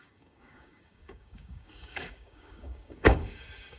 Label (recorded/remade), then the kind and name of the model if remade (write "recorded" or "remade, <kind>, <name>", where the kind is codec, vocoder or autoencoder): remade, codec, DAC